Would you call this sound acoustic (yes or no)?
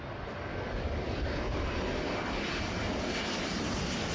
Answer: yes